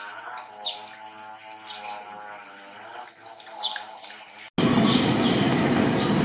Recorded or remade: recorded